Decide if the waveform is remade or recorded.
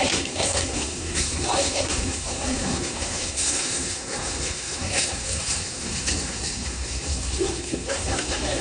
remade